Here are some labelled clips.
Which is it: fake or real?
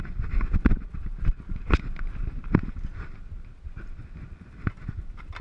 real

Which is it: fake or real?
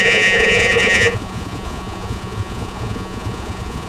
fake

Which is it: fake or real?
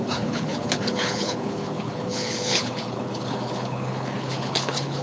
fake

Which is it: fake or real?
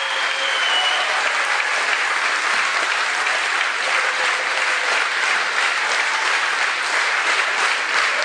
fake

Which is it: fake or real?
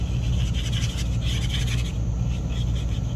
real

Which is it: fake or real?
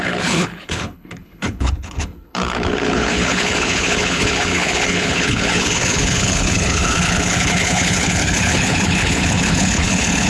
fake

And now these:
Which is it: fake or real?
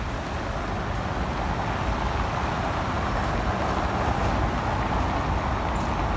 real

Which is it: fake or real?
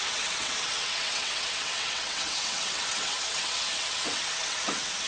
fake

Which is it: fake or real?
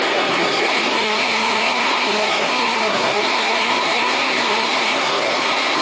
fake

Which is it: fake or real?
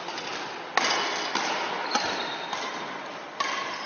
real